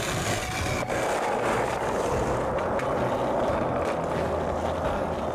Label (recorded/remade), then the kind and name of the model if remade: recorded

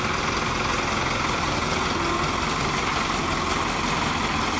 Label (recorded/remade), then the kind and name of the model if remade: recorded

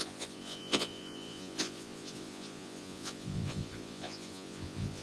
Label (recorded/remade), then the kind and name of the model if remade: remade, vocoder, Vocos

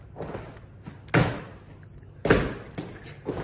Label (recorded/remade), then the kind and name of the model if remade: recorded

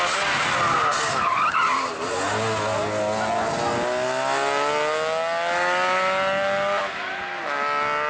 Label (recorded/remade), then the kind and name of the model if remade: recorded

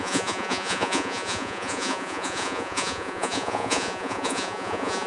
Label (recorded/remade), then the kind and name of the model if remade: remade, vocoder, Vocos